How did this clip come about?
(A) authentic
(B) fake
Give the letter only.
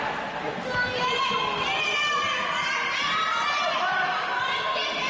A